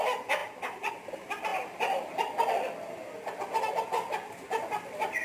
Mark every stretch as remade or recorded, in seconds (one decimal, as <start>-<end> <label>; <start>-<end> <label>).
0.0-5.2 recorded